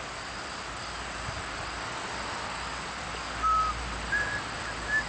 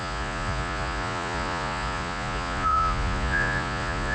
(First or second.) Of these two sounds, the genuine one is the first